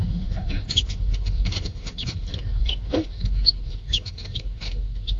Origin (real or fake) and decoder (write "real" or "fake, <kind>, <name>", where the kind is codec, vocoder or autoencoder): fake, autoencoder, DAC-VAE